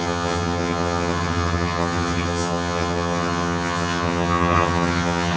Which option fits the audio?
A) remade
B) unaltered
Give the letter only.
A